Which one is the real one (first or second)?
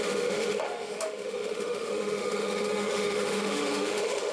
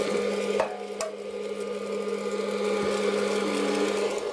second